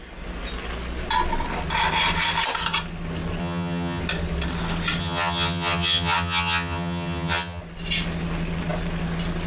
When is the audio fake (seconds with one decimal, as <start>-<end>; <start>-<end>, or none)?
3.4-4.0; 5.0-7.6